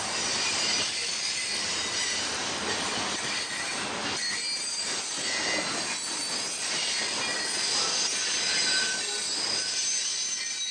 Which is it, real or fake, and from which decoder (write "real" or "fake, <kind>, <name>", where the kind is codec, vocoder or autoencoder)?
real